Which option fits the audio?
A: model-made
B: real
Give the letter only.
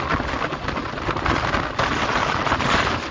B